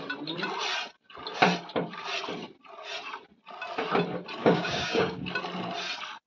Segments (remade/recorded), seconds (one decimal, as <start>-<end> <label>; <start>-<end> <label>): 0.0-4.4 recorded; 4.4-5.2 remade; 5.2-6.3 recorded